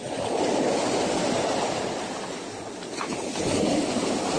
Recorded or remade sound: recorded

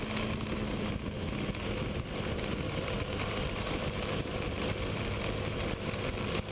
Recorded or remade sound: recorded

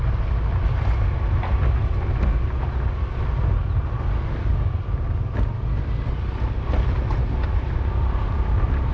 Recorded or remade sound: recorded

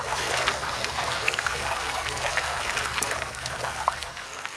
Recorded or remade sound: remade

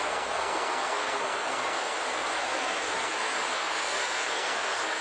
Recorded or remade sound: remade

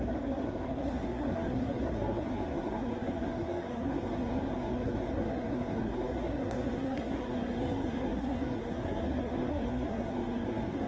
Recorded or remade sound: remade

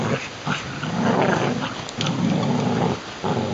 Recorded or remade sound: recorded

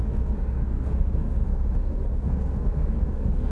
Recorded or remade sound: remade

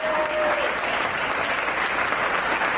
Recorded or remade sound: recorded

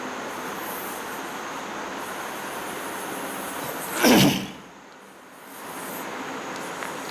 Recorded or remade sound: recorded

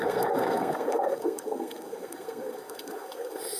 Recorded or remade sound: remade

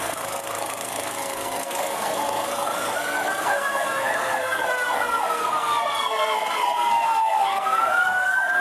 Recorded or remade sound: remade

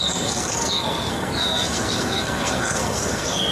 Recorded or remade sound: remade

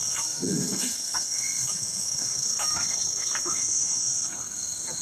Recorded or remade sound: remade